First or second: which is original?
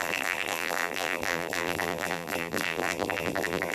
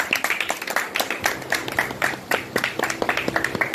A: second